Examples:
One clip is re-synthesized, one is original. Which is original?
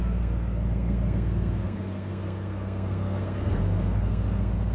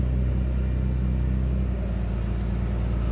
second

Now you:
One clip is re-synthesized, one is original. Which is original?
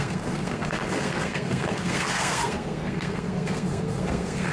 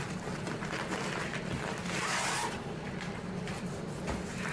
second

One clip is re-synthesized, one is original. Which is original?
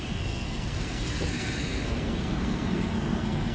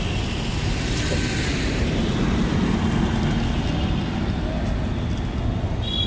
second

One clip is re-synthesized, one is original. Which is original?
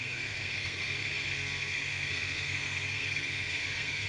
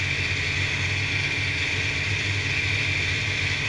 second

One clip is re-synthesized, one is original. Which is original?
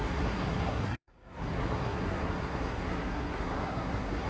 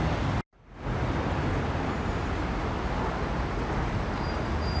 second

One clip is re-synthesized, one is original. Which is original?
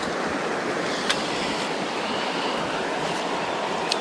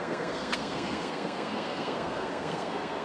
first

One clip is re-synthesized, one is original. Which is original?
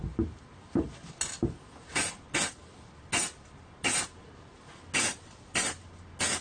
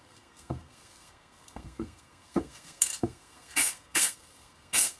first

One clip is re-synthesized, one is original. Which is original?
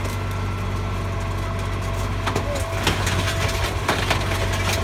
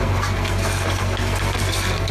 first